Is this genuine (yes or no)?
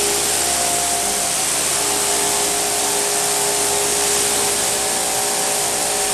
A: yes